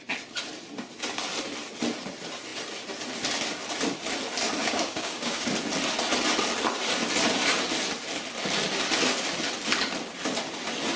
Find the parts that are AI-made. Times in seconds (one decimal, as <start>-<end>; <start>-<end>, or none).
4.6-5.5